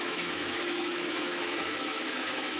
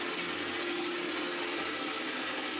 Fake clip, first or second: first